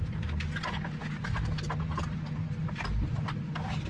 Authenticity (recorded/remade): recorded